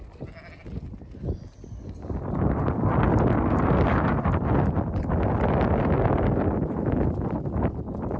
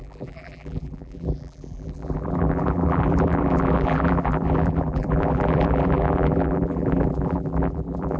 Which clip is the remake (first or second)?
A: second